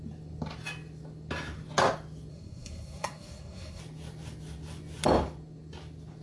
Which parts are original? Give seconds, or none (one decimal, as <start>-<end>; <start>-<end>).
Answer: 0.0-2.3; 3.8-6.2